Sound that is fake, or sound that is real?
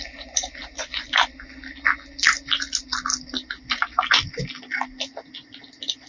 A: real